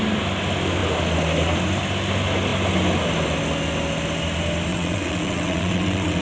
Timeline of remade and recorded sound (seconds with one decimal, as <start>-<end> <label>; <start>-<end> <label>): 0.0-4.7 recorded; 4.7-6.2 remade